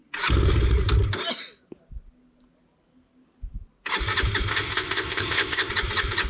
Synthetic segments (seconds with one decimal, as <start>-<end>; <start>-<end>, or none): 4.5-5.7